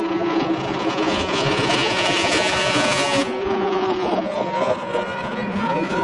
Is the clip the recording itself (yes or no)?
no